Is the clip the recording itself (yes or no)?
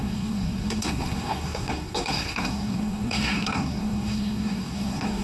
no